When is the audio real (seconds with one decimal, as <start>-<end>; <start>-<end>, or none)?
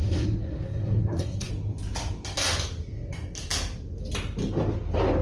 1.5-5.2